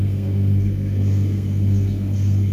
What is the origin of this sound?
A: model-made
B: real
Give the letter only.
A